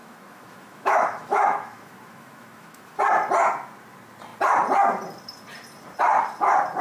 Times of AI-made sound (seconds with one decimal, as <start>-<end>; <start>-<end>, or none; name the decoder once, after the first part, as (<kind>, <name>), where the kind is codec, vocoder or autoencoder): 0.0-3.0 (autoencoder, DAC-VAE)